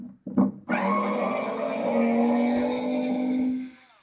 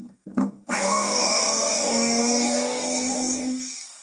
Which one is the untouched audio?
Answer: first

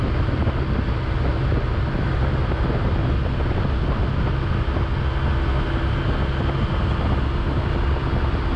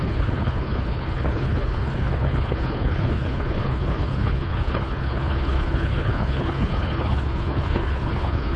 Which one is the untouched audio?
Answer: first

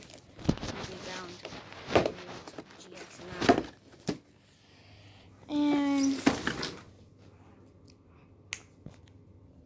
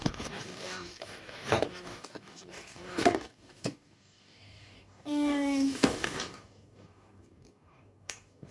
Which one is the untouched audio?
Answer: first